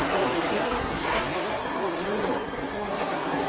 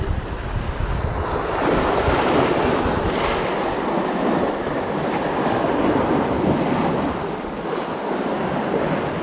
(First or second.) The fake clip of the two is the first